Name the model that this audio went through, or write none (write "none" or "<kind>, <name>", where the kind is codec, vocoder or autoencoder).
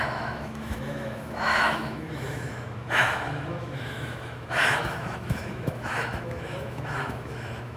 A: autoencoder, DAC-VAE